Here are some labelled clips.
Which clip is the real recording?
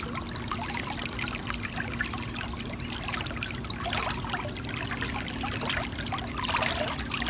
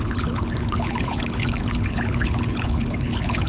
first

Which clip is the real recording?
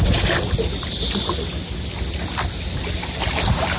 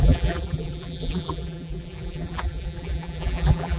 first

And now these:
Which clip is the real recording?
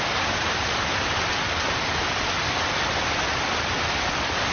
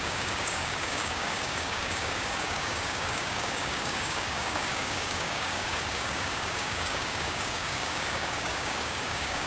first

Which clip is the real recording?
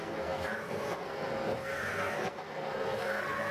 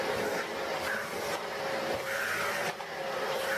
second